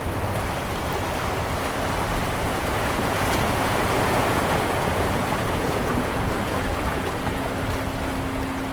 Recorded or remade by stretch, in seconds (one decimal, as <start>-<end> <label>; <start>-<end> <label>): 0.0-2.5 recorded; 2.5-7.5 remade; 7.5-8.7 recorded